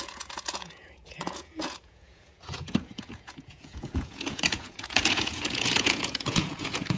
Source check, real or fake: fake